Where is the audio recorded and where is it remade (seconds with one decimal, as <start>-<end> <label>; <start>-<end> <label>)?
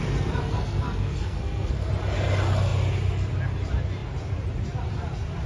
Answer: 0.0-0.4 recorded; 0.4-1.9 remade; 1.9-5.5 recorded